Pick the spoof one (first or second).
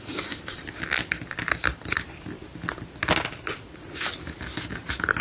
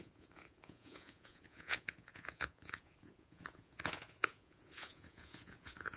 second